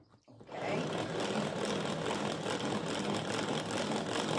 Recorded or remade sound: recorded